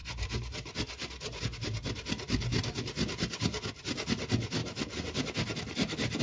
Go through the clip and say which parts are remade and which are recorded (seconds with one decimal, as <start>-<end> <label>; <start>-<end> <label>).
0.0-6.2 recorded